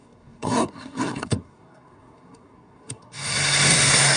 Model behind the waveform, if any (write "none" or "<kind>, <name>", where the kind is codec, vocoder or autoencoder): codec, SNAC